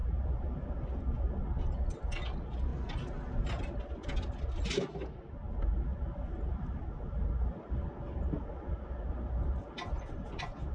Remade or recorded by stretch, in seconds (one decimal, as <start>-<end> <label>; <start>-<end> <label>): 0.0-1.0 remade; 1.0-10.7 recorded